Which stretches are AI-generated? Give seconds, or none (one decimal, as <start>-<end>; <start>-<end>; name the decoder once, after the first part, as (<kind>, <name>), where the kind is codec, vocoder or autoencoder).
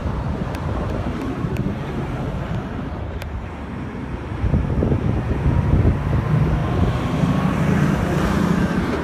0.0-5.3 (vocoder, BigVGAN v2); 6.6-7.8